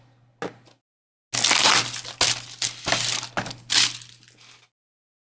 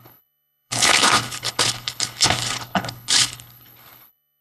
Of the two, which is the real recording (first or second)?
first